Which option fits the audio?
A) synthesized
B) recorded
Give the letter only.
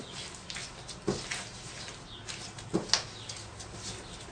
B